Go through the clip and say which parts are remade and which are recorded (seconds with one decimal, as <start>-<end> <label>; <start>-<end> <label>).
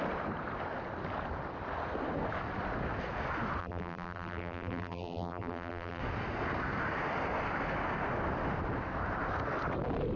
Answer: 0.0-3.6 recorded; 3.6-6.0 remade; 6.0-10.2 recorded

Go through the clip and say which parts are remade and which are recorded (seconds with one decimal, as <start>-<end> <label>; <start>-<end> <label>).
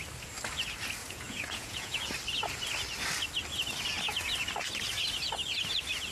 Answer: 0.0-1.0 recorded; 1.0-2.1 remade; 2.1-6.1 recorded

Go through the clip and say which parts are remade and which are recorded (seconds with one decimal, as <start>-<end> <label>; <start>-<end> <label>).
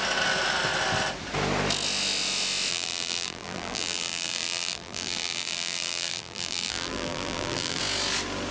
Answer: 0.0-2.7 recorded; 2.7-7.8 remade; 7.8-8.5 recorded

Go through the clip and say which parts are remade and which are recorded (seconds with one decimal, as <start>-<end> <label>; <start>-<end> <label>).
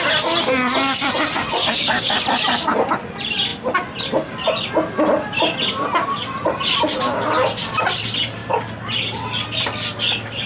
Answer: 0.0-1.6 recorded; 1.6-2.2 remade; 2.2-10.5 recorded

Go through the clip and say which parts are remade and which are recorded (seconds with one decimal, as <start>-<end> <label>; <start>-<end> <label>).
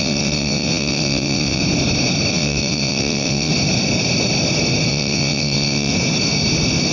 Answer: 0.0-1.6 remade; 1.6-2.3 recorded; 2.3-3.5 remade; 3.5-4.9 recorded; 4.9-5.9 remade; 5.9-6.9 recorded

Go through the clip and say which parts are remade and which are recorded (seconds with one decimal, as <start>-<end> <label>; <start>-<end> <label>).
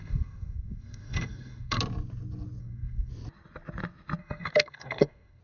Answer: 0.0-1.8 remade; 1.8-2.6 recorded; 2.6-3.1 remade; 3.1-4.2 recorded; 4.2-5.4 remade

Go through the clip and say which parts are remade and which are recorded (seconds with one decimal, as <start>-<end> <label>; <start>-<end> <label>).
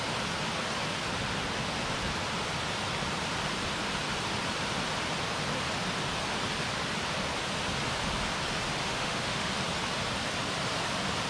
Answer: 0.0-8.8 recorded; 8.8-9.5 remade; 9.5-11.3 recorded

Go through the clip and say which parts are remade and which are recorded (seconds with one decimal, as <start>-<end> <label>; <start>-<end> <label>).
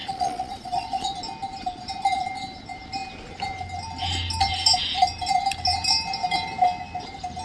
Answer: 0.0-1.1 remade; 1.1-7.4 recorded